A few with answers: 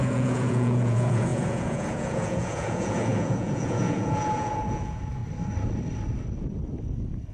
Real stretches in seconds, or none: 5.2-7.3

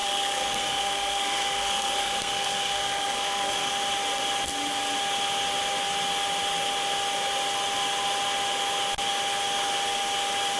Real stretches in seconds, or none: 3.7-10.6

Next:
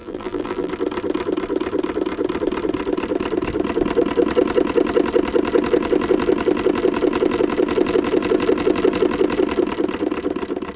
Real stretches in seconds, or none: 0.7-10.8

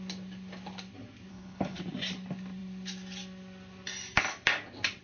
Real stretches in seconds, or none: 0.0-1.3; 1.8-5.0